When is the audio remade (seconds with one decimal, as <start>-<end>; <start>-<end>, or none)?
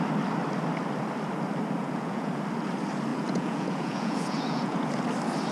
1.8-2.3; 3.1-4.9